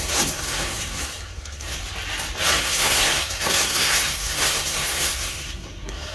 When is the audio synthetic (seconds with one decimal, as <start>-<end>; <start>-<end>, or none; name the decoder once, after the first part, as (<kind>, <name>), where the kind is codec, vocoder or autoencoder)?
0.0-1.8 (codec, SNAC); 2.5-6.1